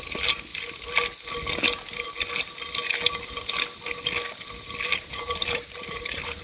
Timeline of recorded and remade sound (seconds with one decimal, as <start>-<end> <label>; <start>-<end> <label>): 0.0-4.9 recorded; 4.9-6.4 remade